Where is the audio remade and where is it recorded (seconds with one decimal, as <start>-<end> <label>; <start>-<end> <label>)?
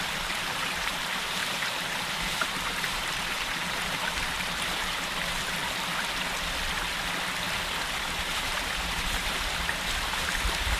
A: 0.0-5.6 remade; 5.6-7.8 recorded; 7.8-10.8 remade